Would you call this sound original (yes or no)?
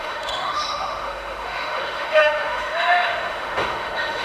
no